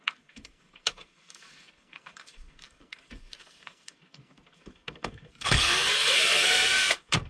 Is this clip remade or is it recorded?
remade